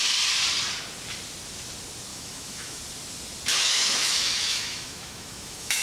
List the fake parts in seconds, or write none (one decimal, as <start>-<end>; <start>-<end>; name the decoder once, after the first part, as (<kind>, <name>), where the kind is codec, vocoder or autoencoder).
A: 2.1-2.8 (autoencoder, DAC-VAE); 3.5-5.8